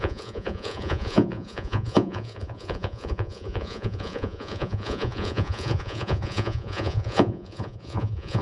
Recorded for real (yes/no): no